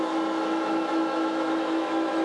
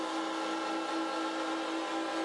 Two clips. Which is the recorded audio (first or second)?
second